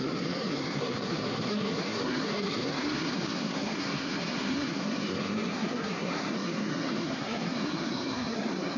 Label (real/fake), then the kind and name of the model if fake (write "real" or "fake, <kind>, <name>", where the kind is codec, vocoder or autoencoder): fake, codec, SNAC